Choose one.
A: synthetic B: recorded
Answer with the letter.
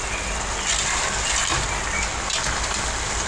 B